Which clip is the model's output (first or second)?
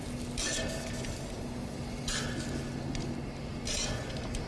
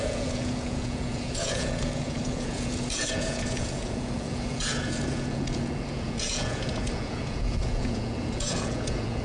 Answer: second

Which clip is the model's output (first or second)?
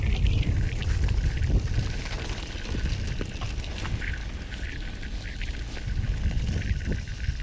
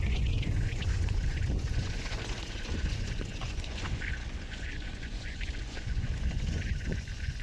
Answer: second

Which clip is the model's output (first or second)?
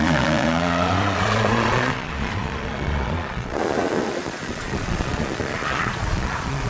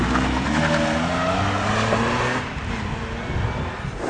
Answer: first